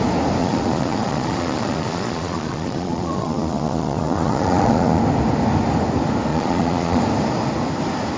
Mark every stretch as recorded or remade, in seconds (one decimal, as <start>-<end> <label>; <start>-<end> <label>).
0.0-0.4 recorded; 0.4-5.0 remade; 5.0-6.3 recorded; 6.3-7.0 remade; 7.0-8.2 recorded